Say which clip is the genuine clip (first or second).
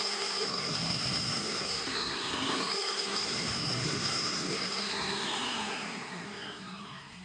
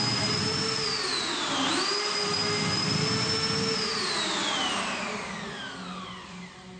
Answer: second